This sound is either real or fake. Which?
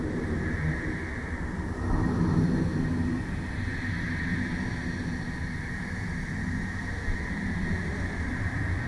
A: real